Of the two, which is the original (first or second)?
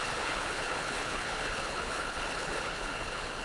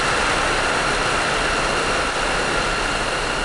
second